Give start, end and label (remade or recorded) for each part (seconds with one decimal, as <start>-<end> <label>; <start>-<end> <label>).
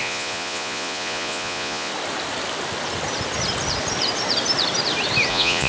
0.0-1.9 remade; 1.9-5.3 recorded; 5.3-5.7 remade